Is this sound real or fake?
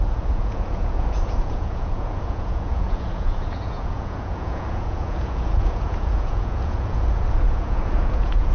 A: fake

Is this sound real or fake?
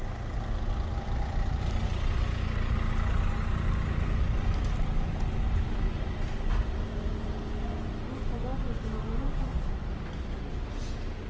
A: real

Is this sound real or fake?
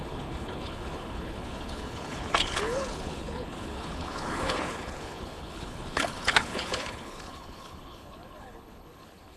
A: fake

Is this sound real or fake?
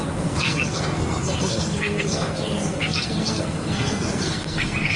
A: fake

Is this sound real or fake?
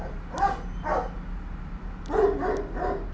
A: real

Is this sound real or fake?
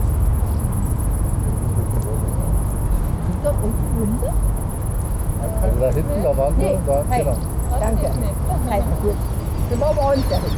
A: real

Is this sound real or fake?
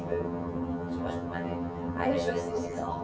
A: fake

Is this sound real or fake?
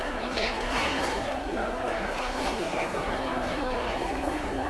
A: fake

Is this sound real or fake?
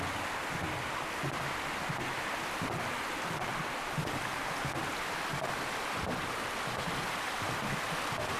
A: real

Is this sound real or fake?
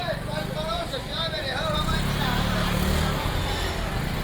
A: real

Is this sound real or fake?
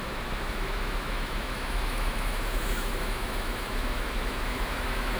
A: fake